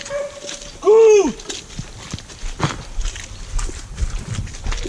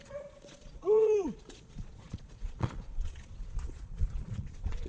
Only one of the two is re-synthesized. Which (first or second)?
second